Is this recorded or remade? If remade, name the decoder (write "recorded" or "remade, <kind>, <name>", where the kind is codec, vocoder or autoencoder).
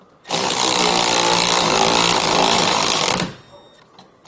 recorded